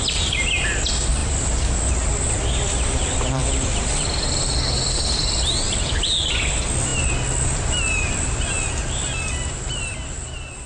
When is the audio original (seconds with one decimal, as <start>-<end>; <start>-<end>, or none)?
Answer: 0.0-10.7